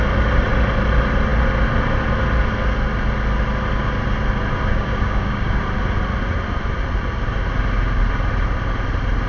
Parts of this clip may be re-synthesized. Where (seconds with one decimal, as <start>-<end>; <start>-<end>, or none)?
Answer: 4.7-5.6

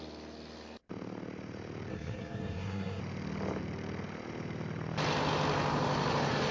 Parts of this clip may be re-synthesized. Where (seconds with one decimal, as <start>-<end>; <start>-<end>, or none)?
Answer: 1.9-3.0